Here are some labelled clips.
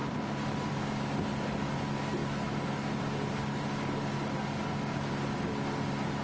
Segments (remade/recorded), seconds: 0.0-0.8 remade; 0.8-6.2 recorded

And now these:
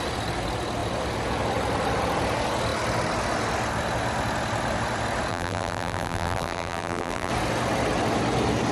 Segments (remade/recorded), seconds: 0.0-5.3 recorded; 5.3-7.3 remade; 7.3-8.7 recorded

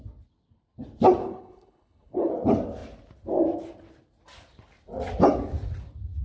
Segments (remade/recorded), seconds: 0.0-1.2 recorded; 1.2-2.3 remade; 2.3-6.2 recorded

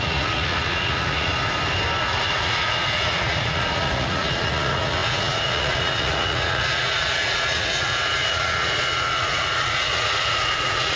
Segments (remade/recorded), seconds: 0.0-1.3 remade; 1.3-2.0 recorded; 2.0-11.0 remade

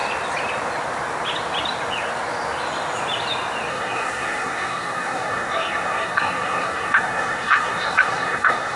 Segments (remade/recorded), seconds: 0.0-3.7 recorded; 3.7-8.8 remade

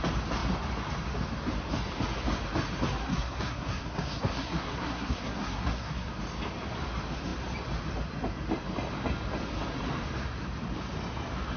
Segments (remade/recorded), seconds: 0.0-3.1 recorded; 3.1-6.1 remade; 6.1-11.6 recorded

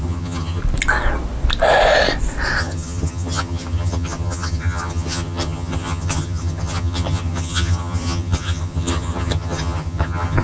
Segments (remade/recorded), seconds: 0.0-0.6 remade; 0.6-2.6 recorded; 2.6-10.4 remade